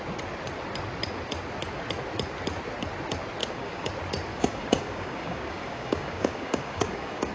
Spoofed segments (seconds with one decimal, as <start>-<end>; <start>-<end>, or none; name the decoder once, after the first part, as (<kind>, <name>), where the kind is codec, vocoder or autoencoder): 3.4-3.9 (codec, DAC); 4.3-7.3